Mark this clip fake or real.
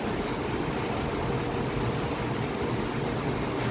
real